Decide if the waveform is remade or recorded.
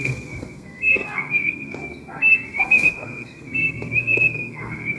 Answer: remade